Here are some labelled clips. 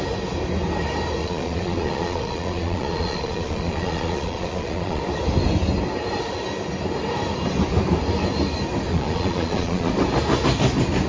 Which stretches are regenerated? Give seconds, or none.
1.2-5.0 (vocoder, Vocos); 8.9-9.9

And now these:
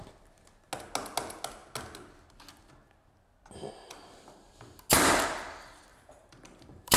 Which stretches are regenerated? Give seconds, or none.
5.9-7.0 (vocoder, BigVGAN v2)

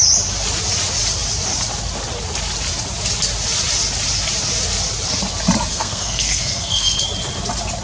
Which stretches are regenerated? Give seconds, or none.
5.7-7.0 (codec, SNAC)

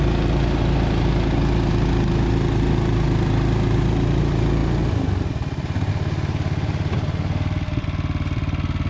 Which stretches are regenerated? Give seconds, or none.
none